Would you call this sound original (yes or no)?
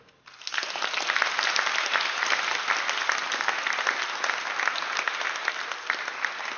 yes